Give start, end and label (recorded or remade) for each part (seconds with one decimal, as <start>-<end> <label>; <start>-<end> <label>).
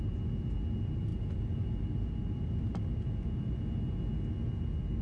0.0-1.1 recorded; 1.1-3.6 remade; 3.6-5.0 recorded